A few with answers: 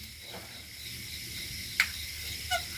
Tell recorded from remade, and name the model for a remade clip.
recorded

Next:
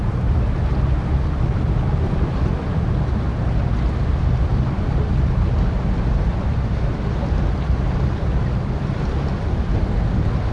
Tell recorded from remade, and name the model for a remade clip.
recorded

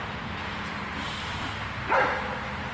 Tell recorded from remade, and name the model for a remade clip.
recorded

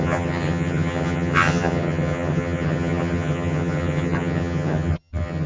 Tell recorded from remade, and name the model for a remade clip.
remade, vocoder, HiFi-GAN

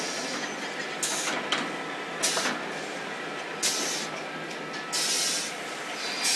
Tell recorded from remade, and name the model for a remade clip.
recorded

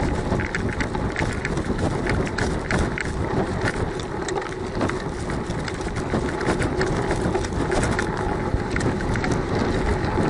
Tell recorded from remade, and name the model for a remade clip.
recorded